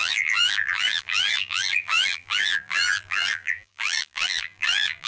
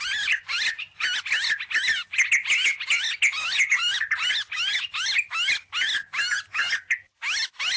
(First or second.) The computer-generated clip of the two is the first